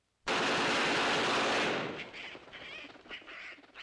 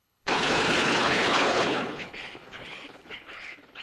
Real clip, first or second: first